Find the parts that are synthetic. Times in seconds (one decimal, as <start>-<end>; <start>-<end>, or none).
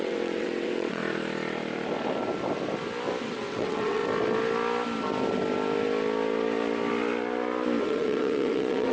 0.0-1.0; 3.2-4.0; 7.8-8.9